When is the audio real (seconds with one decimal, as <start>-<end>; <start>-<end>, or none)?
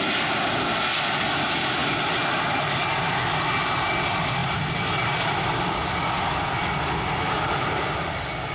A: 0.0-8.5